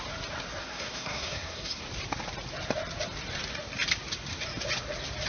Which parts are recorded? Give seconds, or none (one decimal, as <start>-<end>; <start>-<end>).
0.0-0.6; 1.8-5.3